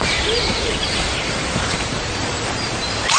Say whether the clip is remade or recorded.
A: remade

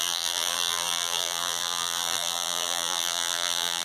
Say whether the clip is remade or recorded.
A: remade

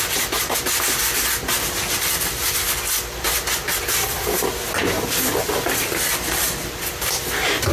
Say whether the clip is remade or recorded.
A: recorded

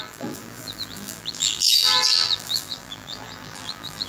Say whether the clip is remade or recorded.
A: remade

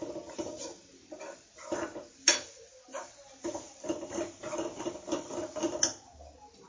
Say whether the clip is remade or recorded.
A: recorded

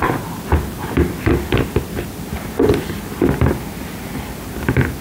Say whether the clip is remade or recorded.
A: recorded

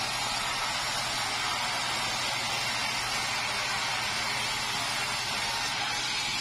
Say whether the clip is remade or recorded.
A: recorded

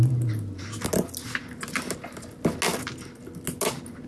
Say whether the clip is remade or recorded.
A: recorded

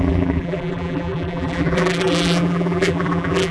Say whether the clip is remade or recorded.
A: remade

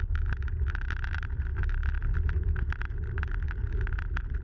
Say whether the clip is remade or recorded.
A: recorded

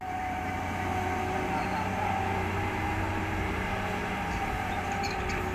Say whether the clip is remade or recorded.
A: remade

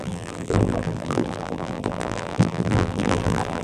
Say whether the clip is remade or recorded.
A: remade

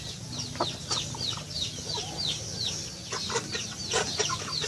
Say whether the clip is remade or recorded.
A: remade